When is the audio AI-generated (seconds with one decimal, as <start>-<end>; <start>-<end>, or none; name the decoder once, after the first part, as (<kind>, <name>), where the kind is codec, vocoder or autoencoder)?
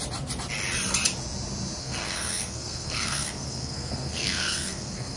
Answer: 1.8-5.2 (codec, SNAC)